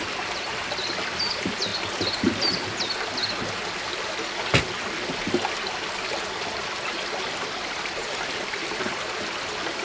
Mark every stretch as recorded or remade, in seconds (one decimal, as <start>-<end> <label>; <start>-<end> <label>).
0.0-9.8 recorded